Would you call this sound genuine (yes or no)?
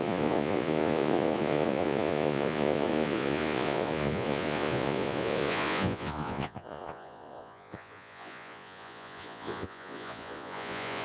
no